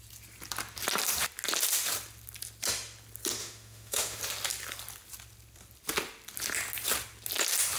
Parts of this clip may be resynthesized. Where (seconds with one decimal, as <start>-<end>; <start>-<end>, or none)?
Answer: 3.4-4.2